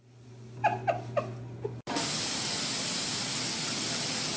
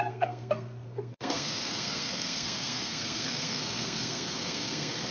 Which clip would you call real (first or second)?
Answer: first